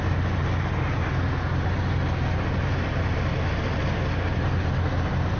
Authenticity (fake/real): real